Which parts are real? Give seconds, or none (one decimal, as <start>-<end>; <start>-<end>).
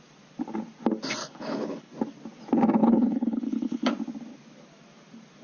0.0-1.2; 1.9-2.8; 3.9-5.4